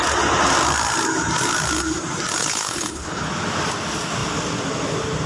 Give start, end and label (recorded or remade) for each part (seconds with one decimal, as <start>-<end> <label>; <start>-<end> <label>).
0.0-2.4 recorded; 2.4-3.3 remade; 3.3-5.3 recorded